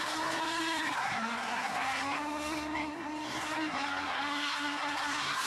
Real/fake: fake